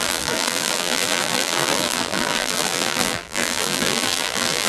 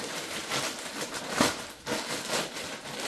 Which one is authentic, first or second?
second